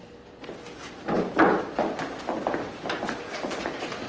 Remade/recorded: recorded